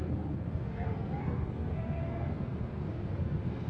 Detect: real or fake fake